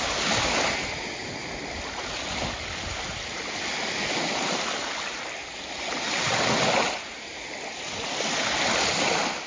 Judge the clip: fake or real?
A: real